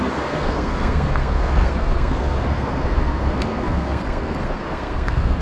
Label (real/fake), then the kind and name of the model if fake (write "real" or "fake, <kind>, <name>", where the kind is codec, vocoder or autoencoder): fake, codec, SNAC